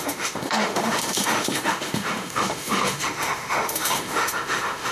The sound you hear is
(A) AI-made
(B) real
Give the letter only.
A